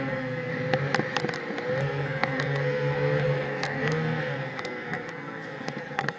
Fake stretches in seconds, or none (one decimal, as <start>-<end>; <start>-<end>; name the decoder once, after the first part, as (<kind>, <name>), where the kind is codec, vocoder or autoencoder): 0.0-0.5 (codec, SNAC); 1.8-6.2